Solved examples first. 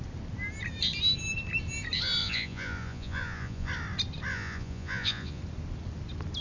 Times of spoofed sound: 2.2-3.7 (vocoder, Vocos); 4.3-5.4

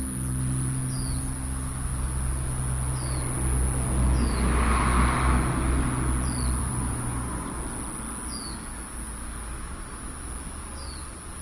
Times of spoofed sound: 6.6-7.5 (vocoder, Vocos)